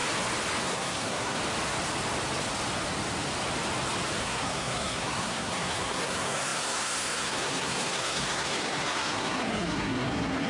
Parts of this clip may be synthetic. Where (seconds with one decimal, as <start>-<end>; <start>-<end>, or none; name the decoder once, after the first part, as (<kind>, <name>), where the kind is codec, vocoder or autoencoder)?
0.6-1.4 (codec, SNAC); 4.2-10.5